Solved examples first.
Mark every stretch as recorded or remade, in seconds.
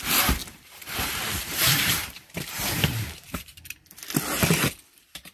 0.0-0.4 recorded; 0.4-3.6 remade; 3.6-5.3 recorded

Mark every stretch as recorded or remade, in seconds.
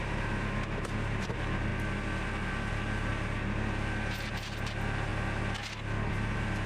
0.0-1.7 remade; 1.7-2.7 recorded; 2.7-3.1 remade; 3.1-4.3 recorded; 4.3-5.1 remade; 5.1-6.1 recorded; 6.1-6.7 remade